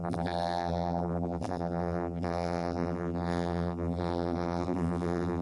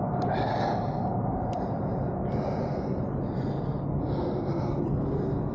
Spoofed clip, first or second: first